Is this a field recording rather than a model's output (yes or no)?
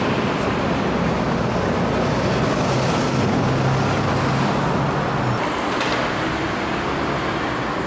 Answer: yes